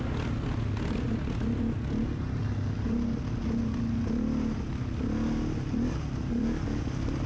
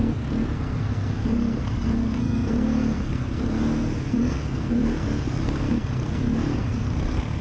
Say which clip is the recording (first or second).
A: first